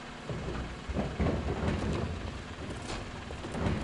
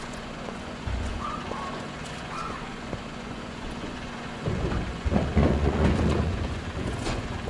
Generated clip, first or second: second